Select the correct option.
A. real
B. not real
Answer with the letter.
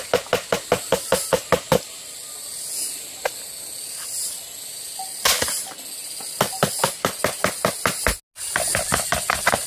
A